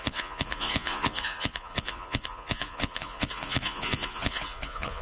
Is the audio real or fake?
fake